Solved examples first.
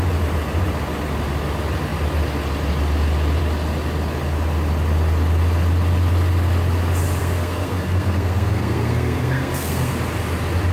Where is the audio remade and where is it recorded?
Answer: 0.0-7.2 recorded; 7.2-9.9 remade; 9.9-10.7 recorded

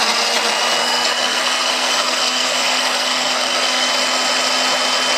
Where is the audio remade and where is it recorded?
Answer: 0.0-0.8 recorded; 0.8-3.9 remade; 3.9-5.2 recorded

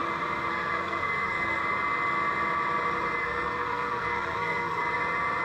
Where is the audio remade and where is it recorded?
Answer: 0.0-0.5 recorded; 0.5-1.6 remade; 1.6-3.2 recorded; 3.2-4.8 remade; 4.8-5.4 recorded

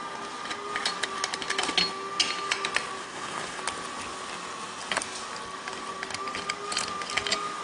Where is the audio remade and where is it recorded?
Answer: 0.0-3.0 recorded; 3.0-3.6 remade; 3.6-7.6 recorded

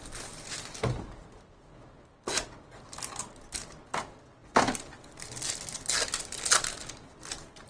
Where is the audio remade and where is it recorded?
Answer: 0.0-7.7 recorded